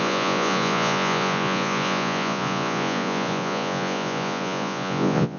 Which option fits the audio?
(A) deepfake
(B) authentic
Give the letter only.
A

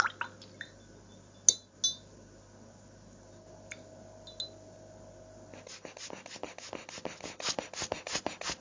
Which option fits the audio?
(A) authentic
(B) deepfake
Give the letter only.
A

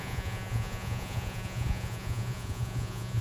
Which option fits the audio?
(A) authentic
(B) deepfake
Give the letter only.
B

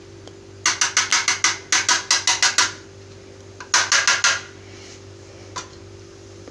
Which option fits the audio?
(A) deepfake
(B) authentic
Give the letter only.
B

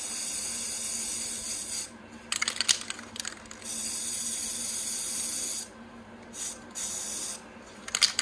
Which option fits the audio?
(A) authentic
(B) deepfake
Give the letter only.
A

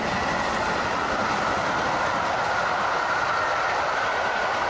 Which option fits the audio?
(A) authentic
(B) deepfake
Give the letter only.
A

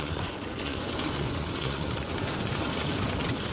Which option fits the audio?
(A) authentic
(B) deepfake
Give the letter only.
B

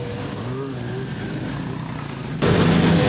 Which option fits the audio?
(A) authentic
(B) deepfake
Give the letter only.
A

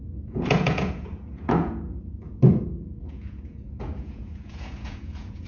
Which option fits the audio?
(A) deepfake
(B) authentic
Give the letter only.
A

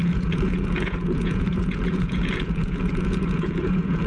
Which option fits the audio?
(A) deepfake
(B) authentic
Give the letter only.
A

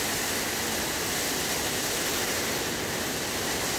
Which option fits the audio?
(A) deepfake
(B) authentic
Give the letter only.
B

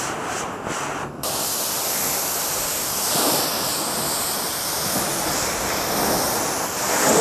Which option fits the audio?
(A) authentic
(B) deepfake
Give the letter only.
A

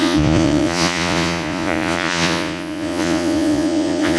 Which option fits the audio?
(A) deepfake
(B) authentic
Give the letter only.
A